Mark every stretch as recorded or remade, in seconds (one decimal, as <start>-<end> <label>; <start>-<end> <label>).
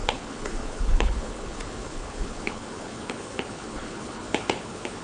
0.0-5.0 remade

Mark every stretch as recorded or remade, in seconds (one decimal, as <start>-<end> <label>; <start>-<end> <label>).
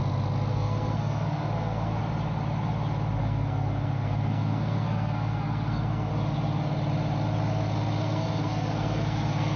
0.0-0.5 recorded; 0.5-2.0 remade; 2.0-3.2 recorded; 3.2-6.1 remade; 6.1-8.0 recorded; 8.0-9.6 remade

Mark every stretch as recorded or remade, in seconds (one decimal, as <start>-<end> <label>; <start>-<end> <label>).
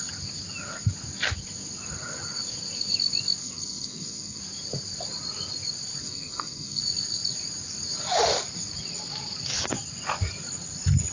0.0-3.4 recorded; 3.4-4.4 remade; 4.4-6.0 recorded; 6.0-6.8 remade; 6.8-11.1 recorded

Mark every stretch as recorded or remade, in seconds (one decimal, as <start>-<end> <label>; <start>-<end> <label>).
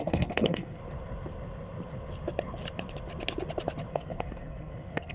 0.0-0.8 remade; 0.8-3.9 recorded; 3.9-5.1 remade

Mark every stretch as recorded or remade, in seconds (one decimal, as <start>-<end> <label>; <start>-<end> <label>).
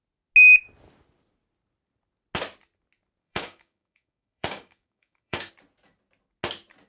0.0-3.2 recorded; 3.2-5.5 remade; 5.5-6.9 recorded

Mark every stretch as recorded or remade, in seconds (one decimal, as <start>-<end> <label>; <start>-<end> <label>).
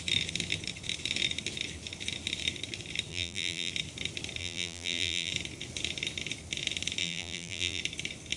0.0-3.1 recorded; 3.1-3.7 remade; 3.7-4.4 recorded; 4.4-5.3 remade; 5.3-7.0 recorded; 7.0-7.8 remade; 7.8-8.4 recorded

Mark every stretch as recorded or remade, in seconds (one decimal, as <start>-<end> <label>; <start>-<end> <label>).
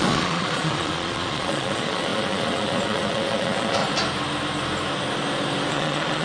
0.0-3.8 remade; 3.8-5.7 recorded; 5.7-6.2 remade